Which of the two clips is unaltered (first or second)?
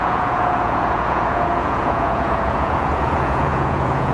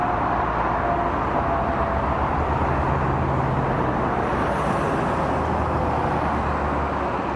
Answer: second